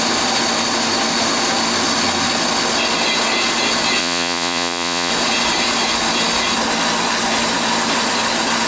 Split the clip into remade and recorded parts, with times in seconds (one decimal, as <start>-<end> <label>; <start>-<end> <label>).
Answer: 0.0-4.0 recorded; 4.0-5.1 remade; 5.1-8.7 recorded